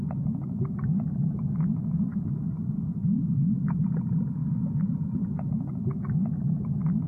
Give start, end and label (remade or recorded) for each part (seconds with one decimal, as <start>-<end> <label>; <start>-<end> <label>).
0.0-7.1 recorded